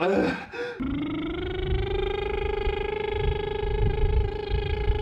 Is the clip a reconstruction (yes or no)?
no